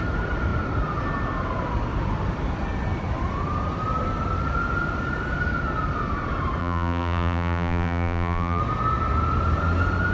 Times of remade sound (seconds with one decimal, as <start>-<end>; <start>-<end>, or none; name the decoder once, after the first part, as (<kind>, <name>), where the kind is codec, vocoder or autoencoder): 6.6-8.6 (vocoder, BigVGAN v2)